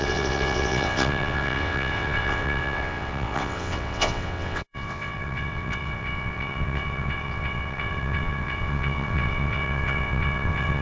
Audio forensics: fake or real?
fake